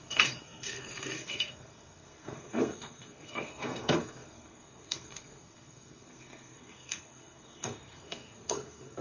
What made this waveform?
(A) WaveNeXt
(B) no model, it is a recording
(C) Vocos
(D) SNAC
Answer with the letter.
D